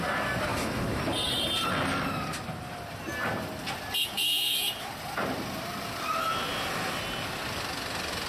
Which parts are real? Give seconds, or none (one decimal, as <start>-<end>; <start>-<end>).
0.0-0.5; 1.0-4.0; 4.9-8.3